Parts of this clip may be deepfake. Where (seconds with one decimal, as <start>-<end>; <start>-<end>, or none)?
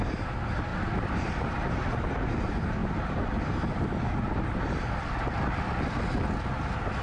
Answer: none